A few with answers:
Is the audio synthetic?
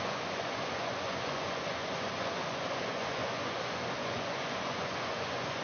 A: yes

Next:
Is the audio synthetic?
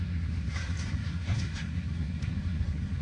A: yes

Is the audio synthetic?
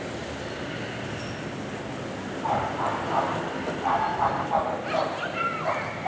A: no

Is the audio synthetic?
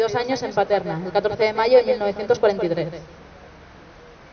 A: no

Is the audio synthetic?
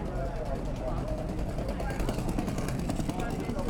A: no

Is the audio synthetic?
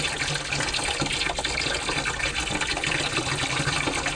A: no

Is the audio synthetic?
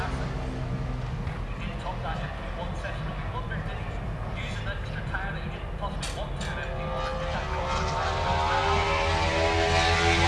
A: no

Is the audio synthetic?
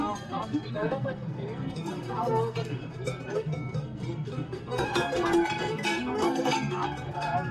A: yes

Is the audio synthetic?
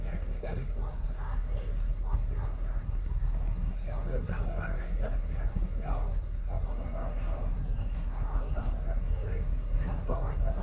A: yes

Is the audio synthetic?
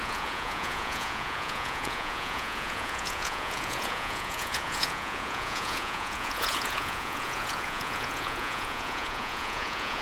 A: yes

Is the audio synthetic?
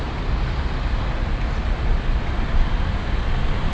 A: no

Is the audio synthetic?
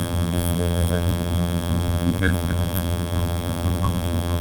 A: yes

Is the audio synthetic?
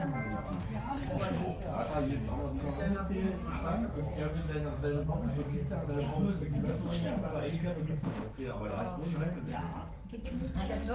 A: yes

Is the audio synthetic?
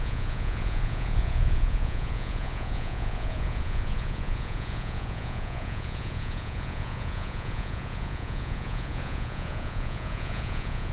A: yes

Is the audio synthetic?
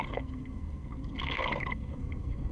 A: yes